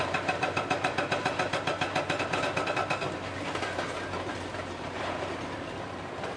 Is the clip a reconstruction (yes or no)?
yes